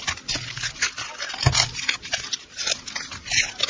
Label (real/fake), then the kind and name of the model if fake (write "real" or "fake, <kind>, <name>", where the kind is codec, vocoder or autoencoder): real